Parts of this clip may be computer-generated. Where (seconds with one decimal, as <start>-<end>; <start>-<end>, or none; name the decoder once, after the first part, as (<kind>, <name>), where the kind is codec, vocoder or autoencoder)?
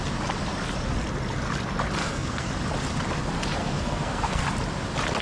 2.0-2.5 (codec, SNAC); 3.6-4.4